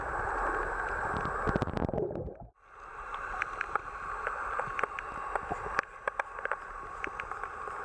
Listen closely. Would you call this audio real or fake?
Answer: real